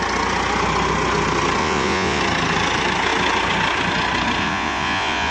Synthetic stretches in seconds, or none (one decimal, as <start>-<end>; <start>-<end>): 1.6-2.2; 4.4-5.3